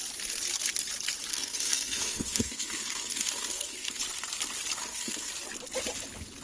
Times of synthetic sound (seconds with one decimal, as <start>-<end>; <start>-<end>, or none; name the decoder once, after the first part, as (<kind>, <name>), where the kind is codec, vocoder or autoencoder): 1.3-4.0 (codec, SNAC); 4.8-5.3